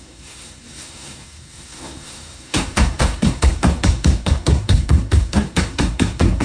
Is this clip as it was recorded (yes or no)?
no